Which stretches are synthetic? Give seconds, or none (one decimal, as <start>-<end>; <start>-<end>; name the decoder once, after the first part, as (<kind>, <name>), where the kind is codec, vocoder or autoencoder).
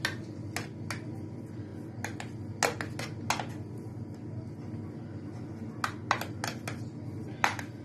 none